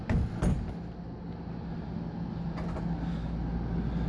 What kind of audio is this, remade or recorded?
recorded